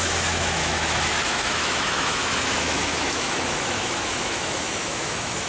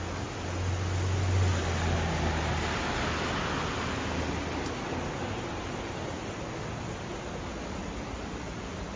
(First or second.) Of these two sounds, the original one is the second